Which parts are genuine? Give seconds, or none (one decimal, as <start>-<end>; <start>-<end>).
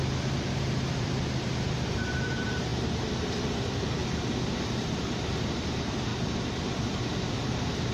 4.0-4.8; 6.1-6.6